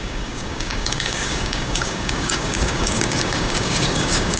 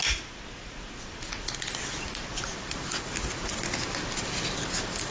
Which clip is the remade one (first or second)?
first